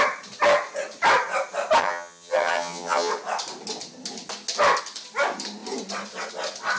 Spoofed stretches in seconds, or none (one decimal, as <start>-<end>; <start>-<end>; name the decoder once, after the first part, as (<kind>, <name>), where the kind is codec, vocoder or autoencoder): 1.8-3.1 (vocoder, HiFi-GAN)